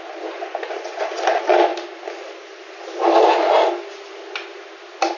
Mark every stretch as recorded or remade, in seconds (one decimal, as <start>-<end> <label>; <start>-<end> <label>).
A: 0.0-5.2 recorded